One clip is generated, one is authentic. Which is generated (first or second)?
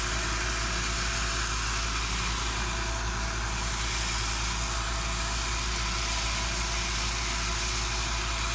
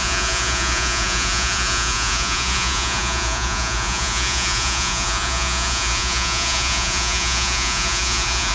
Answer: second